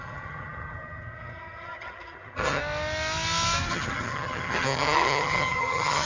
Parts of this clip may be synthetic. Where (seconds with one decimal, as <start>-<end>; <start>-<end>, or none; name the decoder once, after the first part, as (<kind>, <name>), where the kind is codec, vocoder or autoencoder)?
0.0-2.6 (vocoder, HiFi-GAN); 3.7-6.1